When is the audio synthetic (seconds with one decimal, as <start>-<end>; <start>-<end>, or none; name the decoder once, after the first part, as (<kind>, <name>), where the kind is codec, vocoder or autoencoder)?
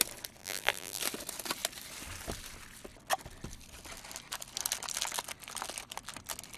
0.4-1.0 (vocoder, BigVGAN v2)